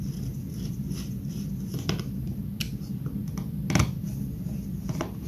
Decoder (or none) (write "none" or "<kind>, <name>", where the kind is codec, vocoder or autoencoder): none